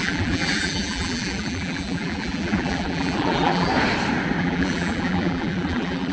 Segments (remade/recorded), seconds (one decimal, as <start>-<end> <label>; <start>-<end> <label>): 0.0-3.7 remade; 3.7-4.4 recorded; 4.4-6.1 remade